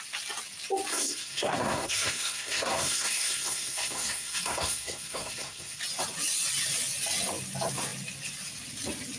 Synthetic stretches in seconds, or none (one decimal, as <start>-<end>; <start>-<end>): 0.9-5.8